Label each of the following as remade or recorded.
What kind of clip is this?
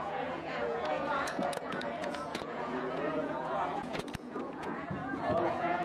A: remade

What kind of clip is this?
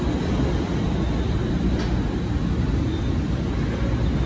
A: recorded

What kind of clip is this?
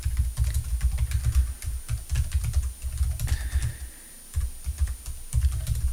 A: recorded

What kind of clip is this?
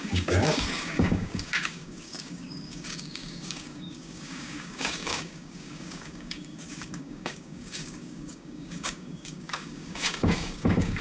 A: remade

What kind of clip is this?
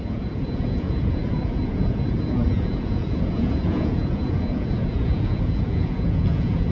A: remade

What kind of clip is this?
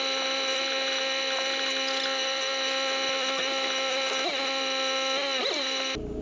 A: recorded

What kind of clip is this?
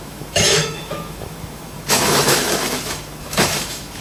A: remade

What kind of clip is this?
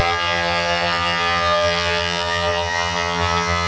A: remade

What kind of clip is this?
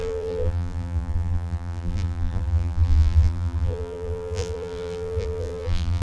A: remade